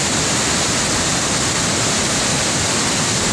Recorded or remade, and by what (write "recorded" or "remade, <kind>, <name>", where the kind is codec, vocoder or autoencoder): recorded